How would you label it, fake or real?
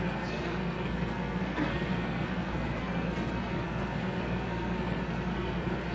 fake